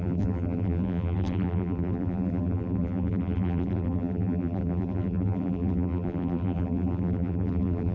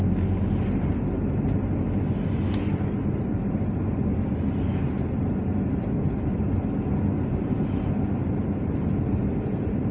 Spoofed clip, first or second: first